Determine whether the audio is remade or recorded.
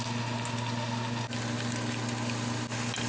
recorded